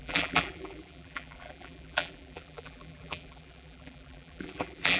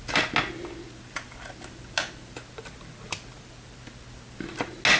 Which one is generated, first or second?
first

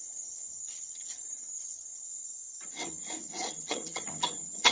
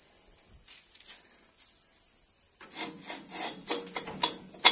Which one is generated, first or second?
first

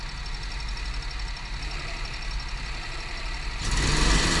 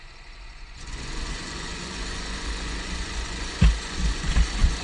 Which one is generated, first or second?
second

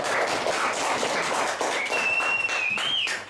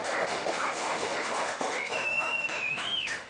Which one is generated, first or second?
second